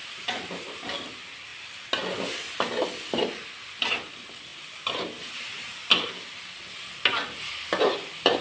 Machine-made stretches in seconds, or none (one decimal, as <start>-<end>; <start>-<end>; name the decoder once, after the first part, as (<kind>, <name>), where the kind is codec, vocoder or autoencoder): 0.0-0.8 (vocoder, BigVGAN v2); 4.5-5.7